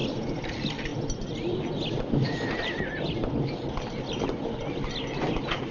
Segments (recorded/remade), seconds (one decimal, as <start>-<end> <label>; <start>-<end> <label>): 0.0-5.7 recorded